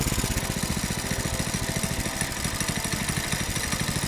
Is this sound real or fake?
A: real